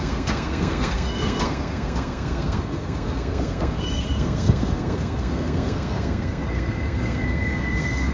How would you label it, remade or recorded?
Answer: remade